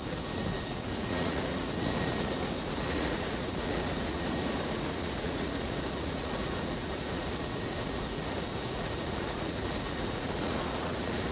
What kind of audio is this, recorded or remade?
remade